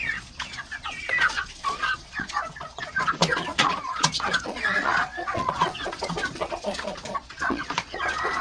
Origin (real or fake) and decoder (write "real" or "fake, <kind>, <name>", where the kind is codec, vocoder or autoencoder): fake, vocoder, Vocos